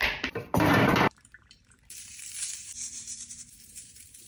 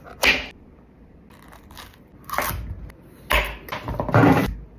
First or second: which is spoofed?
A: first